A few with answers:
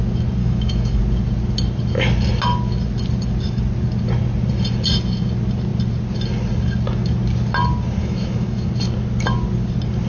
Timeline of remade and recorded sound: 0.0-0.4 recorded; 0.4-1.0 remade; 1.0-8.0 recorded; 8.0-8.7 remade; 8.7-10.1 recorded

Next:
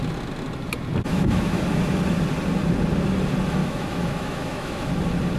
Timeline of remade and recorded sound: 0.0-1.1 recorded; 1.1-1.6 remade; 1.6-3.6 recorded; 3.6-4.9 remade; 4.9-5.4 recorded

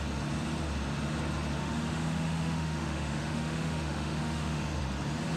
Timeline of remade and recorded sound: 0.0-1.6 recorded; 1.6-4.8 remade; 4.8-5.4 recorded

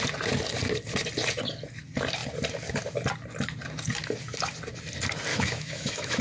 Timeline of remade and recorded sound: 0.0-5.3 recorded; 5.3-6.2 remade

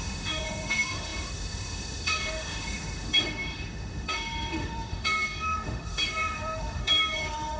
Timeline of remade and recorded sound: 0.0-7.6 remade